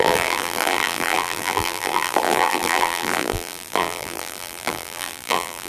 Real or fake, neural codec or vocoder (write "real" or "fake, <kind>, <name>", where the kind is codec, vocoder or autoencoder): fake, vocoder, BigVGAN v2